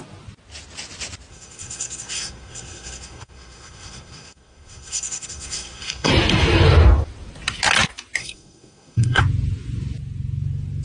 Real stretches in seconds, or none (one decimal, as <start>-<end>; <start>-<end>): 0.0-1.3; 6.1-8.2; 9.2-10.8